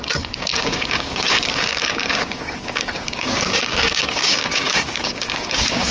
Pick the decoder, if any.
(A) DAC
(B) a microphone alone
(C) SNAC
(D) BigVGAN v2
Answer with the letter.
A